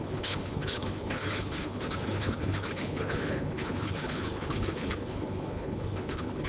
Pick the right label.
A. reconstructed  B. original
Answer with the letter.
A